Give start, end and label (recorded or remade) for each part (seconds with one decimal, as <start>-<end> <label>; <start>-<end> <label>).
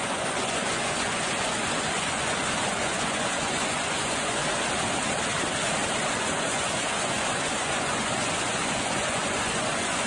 0.0-4.4 remade; 4.4-6.1 recorded; 6.1-10.1 remade